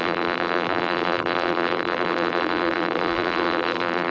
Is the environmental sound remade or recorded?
remade